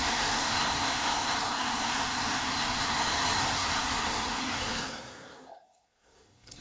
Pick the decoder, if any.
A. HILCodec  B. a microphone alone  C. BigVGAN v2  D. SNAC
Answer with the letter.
D